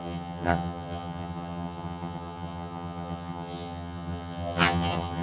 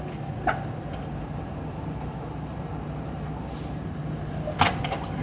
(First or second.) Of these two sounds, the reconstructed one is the first